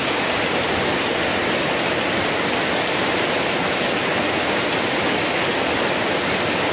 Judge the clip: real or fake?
real